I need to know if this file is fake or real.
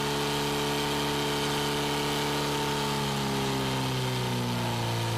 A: real